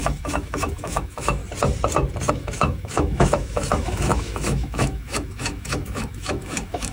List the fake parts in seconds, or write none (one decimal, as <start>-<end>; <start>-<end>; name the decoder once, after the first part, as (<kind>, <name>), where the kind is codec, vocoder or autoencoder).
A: 0.0-1.4 (autoencoder, DAC-VAE); 2.3-6.9